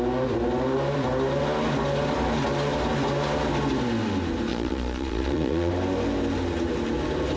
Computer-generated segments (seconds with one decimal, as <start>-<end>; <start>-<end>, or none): 4.5-5.7